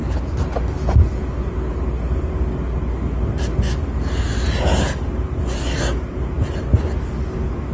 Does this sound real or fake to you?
real